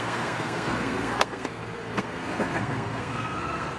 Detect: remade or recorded remade